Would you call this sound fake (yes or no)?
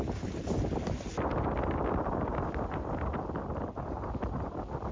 no